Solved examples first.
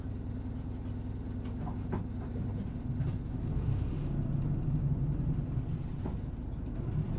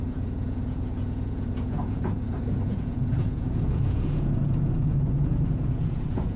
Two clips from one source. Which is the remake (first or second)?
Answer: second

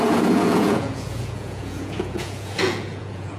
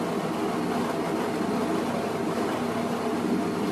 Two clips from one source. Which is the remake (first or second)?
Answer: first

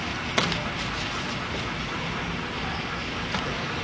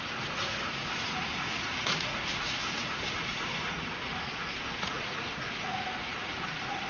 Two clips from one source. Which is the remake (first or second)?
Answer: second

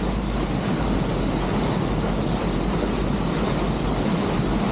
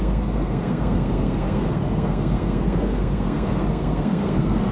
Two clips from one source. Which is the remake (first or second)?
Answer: second